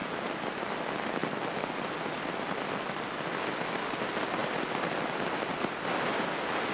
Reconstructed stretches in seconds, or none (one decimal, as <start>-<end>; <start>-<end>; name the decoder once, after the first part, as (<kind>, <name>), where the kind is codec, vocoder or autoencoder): none